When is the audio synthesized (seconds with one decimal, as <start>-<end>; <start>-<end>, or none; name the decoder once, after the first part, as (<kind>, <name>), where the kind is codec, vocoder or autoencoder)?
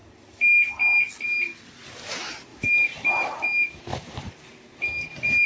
2.5-3.1 (vocoder, BigVGAN v2); 3.9-4.5